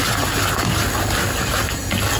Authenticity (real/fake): real